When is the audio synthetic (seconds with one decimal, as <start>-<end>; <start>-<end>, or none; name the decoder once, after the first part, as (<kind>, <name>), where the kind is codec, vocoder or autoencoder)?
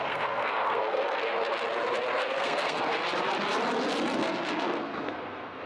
0.0-1.3 (codec, SNAC); 2.2-2.9; 4.2-5.7